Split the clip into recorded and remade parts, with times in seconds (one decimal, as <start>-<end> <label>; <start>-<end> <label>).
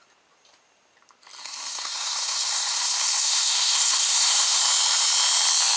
0.0-1.4 recorded; 1.4-4.6 remade; 4.6-5.8 recorded